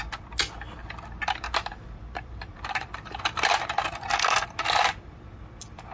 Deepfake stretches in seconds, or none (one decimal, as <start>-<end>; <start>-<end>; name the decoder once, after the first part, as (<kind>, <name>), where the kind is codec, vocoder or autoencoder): 0.8-3.2 (vocoder, BigVGAN v2)